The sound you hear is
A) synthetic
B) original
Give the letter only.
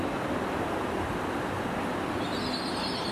B